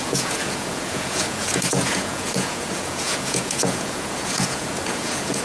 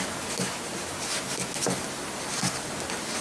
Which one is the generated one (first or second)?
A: first